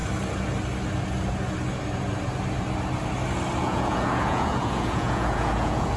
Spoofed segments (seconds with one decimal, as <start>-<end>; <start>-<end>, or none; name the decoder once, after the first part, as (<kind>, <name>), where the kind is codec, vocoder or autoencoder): 3.6-6.0 (vocoder, Vocos)